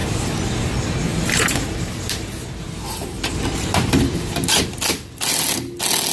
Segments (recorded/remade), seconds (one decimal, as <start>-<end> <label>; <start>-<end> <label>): 0.0-0.6 remade; 0.6-1.1 recorded; 1.1-4.8 remade; 4.8-6.1 recorded